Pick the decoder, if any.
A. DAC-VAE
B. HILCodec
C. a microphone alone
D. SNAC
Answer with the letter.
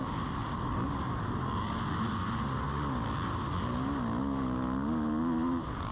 C